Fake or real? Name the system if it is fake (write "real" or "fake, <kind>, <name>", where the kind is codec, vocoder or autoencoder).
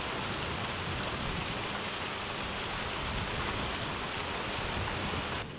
real